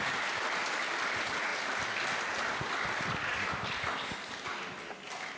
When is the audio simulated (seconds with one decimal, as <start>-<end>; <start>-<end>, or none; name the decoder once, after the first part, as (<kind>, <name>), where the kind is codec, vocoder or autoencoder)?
none